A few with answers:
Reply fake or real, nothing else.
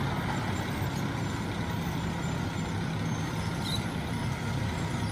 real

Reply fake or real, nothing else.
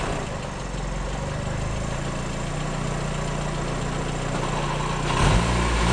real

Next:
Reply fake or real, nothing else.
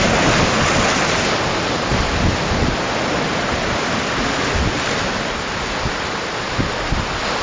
real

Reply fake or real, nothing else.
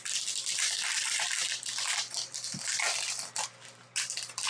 real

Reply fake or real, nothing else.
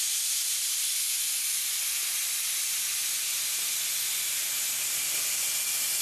real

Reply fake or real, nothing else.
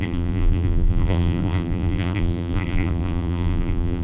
fake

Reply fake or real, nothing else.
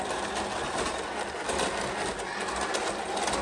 real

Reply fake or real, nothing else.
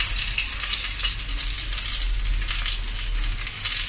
real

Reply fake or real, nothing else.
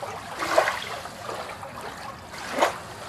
real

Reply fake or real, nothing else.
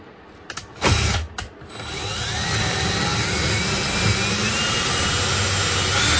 real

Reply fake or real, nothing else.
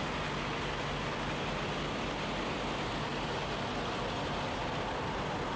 real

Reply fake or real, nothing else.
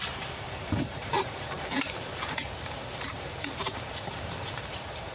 fake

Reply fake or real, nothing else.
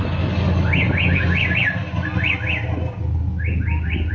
real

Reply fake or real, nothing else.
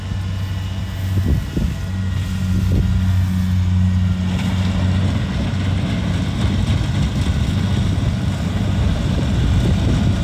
real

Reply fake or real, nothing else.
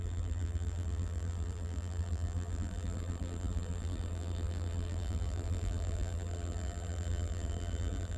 fake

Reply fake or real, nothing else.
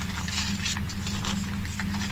real